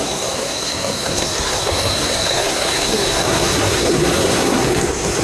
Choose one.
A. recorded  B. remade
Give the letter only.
B